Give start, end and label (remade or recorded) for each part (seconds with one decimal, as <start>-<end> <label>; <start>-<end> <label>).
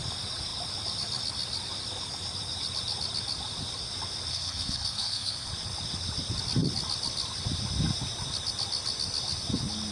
0.0-4.3 recorded; 4.3-5.5 remade; 5.5-9.9 recorded